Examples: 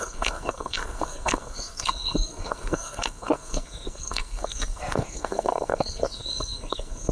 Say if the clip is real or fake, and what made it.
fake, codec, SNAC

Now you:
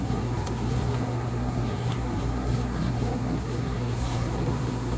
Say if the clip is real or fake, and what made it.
fake, codec, SNAC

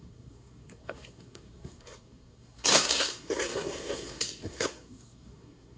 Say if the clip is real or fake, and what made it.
fake, codec, SNAC